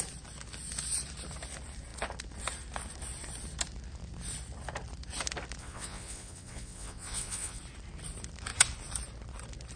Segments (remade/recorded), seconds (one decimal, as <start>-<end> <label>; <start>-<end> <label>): 0.0-5.6 recorded; 5.6-7.6 remade; 7.6-9.8 recorded